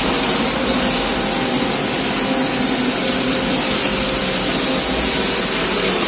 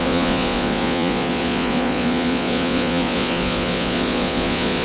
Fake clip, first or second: second